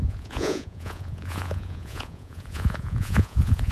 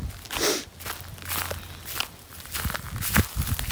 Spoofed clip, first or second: first